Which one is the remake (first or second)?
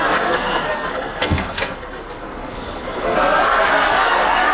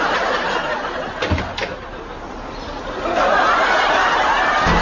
first